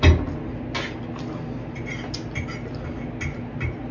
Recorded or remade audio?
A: recorded